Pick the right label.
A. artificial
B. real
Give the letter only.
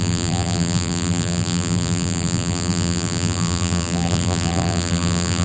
A